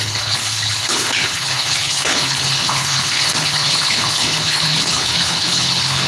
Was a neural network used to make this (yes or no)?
yes